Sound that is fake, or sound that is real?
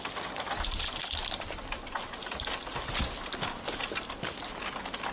real